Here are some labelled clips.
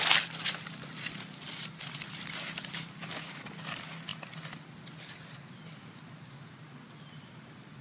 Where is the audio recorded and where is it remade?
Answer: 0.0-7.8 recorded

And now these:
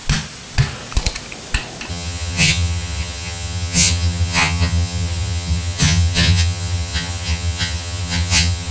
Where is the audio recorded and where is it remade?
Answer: 0.0-1.9 recorded; 1.9-8.7 remade